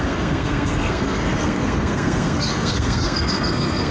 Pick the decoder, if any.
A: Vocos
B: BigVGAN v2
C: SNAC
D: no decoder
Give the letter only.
C